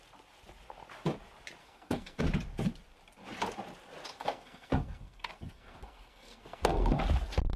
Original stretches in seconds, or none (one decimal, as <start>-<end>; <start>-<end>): 0.0-1.6; 2.2-4.1; 7.0-7.6